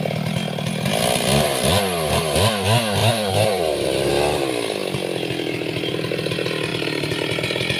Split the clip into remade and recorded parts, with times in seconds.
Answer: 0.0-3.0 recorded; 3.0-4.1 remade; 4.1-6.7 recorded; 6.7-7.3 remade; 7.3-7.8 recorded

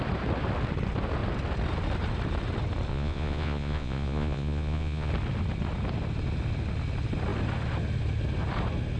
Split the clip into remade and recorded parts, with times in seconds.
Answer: 0.0-2.9 recorded; 2.9-5.1 remade; 5.1-9.0 recorded